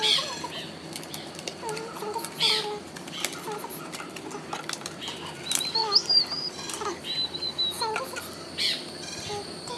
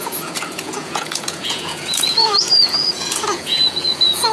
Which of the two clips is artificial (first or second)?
second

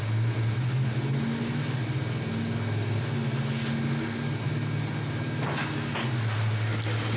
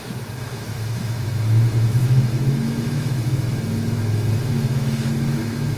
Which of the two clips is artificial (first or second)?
second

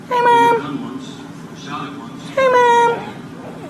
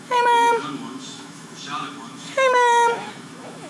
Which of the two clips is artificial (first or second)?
second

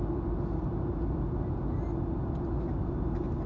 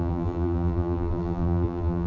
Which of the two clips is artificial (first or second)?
second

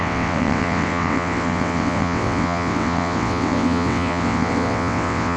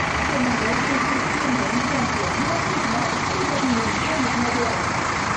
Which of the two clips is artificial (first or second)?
first